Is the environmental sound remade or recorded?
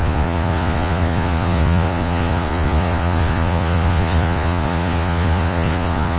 remade